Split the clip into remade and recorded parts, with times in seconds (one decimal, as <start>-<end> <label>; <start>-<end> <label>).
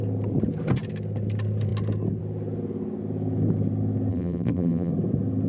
0.0-4.1 recorded; 4.1-4.9 remade; 4.9-5.5 recorded